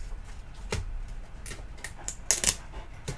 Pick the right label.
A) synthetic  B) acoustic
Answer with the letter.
B